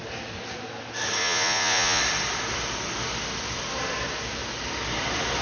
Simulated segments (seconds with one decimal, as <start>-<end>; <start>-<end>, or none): 1.2-2.0